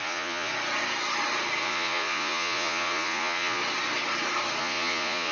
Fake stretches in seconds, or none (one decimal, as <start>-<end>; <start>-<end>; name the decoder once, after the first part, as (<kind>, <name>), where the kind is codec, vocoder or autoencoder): 0.0-0.5 (vocoder, Vocos); 1.6-3.6; 4.6-5.3